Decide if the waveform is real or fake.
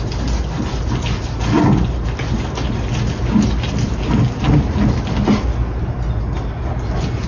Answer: real